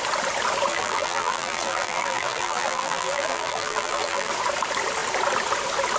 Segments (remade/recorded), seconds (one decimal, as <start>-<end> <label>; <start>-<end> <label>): 0.0-0.7 recorded; 0.7-4.3 remade; 4.3-6.0 recorded